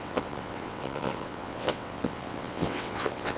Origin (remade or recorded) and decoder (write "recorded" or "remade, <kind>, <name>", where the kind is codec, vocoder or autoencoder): remade, vocoder, WaveNeXt